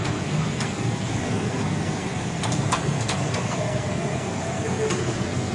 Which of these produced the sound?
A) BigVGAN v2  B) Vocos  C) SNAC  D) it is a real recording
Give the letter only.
C